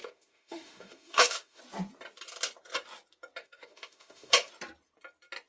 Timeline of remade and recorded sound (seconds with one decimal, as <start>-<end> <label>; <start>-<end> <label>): 0.0-1.6 remade; 1.6-3.4 recorded; 3.4-4.5 remade; 4.5-5.5 recorded